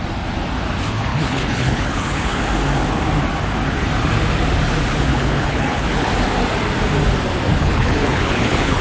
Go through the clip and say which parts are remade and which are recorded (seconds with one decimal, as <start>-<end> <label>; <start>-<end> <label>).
0.0-1.1 recorded; 1.1-2.4 remade; 2.4-5.1 recorded; 5.1-6.1 remade; 6.1-7.5 recorded; 7.5-8.8 remade